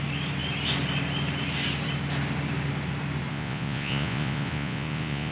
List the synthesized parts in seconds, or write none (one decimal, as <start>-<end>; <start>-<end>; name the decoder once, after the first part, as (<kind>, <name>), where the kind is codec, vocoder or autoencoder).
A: 3.3-5.3 (vocoder, Vocos)